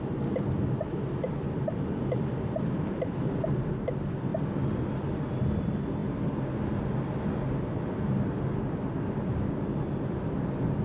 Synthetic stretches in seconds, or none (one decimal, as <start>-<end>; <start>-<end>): 0.0-4.3; 5.2-6.0; 9.8-10.8